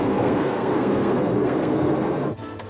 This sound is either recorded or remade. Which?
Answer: remade